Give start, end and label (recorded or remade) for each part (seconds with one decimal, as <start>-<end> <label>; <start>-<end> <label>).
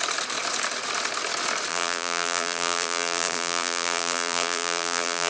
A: 0.0-1.7 recorded; 1.7-5.3 remade